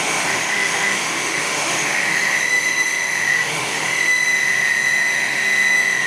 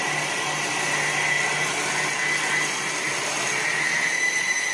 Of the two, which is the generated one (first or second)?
first